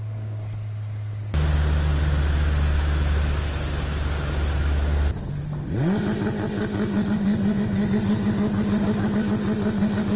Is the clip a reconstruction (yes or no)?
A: no